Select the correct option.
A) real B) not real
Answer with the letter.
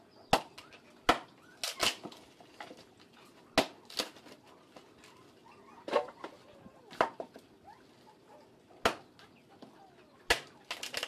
A